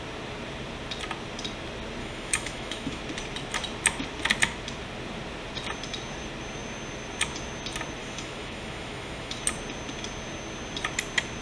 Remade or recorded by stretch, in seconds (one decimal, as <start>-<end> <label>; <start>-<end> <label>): 0.0-2.0 recorded; 2.0-3.0 remade; 3.0-8.0 recorded; 8.0-9.4 remade; 9.4-11.4 recorded